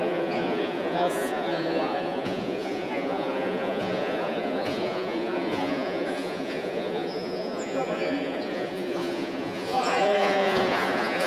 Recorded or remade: remade